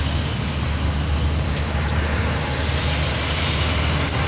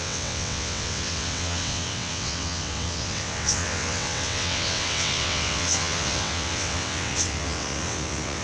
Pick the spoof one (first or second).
second